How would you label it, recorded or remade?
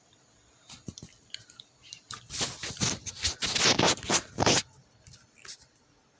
recorded